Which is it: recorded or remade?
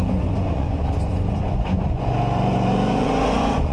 remade